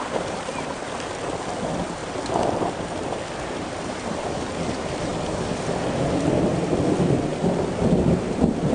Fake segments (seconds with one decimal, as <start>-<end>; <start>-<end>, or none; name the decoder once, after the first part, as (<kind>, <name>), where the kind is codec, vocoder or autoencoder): none